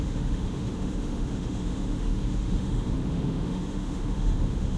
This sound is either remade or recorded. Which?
remade